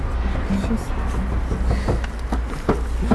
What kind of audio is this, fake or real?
real